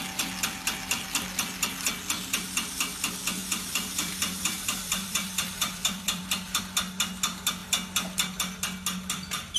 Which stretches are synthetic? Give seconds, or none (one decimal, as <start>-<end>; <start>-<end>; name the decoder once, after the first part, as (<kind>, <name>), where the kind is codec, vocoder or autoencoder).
3.4-6.6 (vocoder, BigVGAN v2)